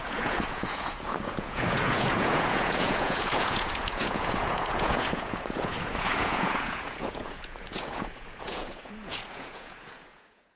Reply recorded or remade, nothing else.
remade